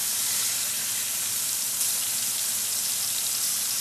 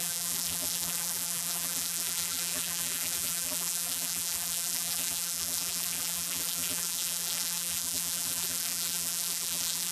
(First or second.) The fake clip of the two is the second